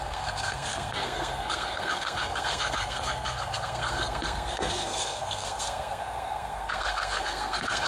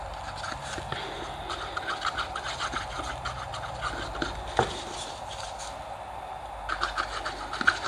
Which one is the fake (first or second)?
first